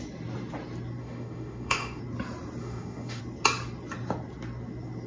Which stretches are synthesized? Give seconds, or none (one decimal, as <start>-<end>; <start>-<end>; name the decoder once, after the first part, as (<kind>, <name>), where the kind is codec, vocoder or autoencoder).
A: 1.0-2.0 (autoencoder, DAC-VAE); 2.6-3.2